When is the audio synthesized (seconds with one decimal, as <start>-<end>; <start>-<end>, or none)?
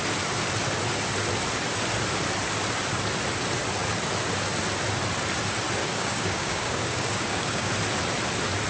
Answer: 5.8-7.7